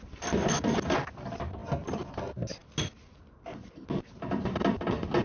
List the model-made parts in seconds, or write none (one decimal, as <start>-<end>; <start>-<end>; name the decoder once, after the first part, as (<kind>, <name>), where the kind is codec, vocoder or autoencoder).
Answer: none